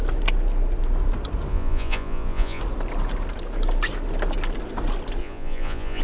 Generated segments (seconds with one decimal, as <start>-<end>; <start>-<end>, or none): 1.5-2.6; 5.2-6.0

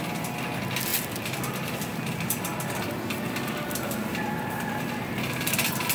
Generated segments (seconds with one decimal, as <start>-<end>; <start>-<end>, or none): none

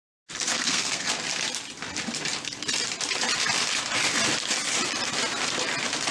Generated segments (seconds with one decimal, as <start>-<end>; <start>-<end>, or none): 0.5-1.1

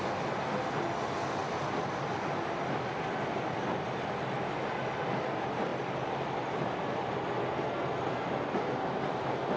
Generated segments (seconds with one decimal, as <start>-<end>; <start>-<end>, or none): none

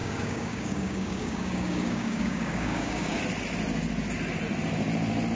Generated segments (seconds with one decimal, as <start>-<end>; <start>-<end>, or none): 0.0-3.2

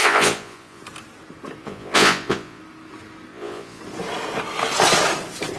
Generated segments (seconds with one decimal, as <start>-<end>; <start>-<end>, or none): 0.0-0.8; 1.6-2.6; 3.3-3.8

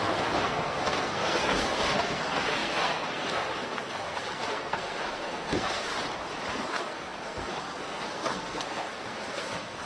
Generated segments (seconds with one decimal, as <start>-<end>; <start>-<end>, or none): 0.0-5.9; 6.5-9.9